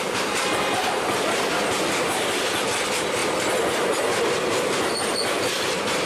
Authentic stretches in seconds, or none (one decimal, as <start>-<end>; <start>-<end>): 0.0-6.1